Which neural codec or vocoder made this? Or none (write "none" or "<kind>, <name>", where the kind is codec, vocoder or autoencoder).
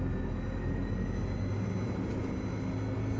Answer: none